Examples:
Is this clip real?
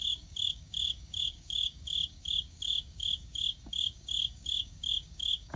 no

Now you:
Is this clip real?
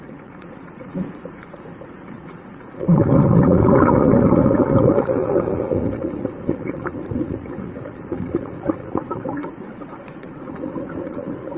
no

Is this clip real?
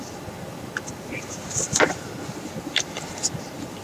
yes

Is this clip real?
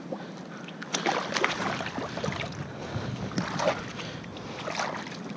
yes